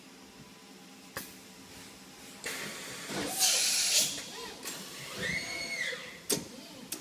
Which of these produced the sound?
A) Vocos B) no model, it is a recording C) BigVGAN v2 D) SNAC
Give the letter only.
B